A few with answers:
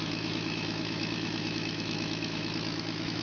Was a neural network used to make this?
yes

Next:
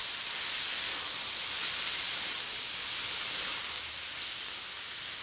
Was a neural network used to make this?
no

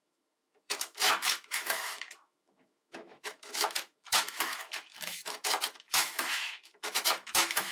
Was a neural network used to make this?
yes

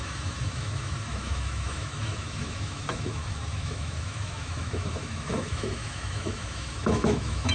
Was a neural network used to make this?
yes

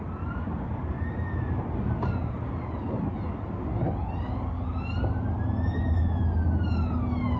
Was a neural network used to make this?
no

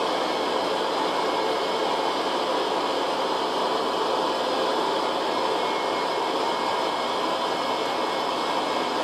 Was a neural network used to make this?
no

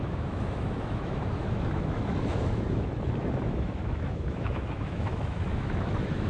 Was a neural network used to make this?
yes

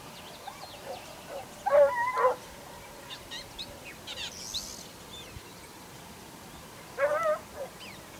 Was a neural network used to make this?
no